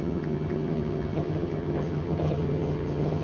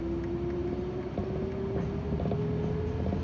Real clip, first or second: second